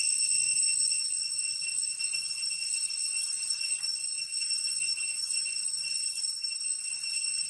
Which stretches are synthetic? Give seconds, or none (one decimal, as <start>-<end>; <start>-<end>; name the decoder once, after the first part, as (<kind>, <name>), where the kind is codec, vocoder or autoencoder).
0.0-6.4 (vocoder, WaveNeXt); 6.9-7.5